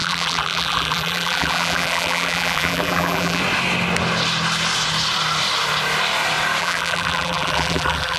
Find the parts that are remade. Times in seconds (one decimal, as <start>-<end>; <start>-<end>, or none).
0.0-3.4; 6.6-8.2